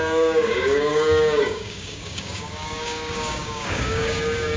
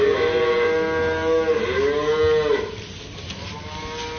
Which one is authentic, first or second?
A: second